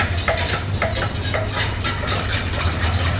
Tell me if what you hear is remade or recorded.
recorded